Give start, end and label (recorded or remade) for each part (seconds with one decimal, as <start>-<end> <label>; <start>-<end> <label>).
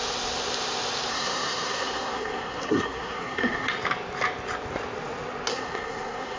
0.0-1.1 recorded; 1.1-3.7 remade; 3.7-5.5 recorded; 5.5-6.4 remade